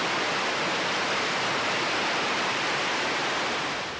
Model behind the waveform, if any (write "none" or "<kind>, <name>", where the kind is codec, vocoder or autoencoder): none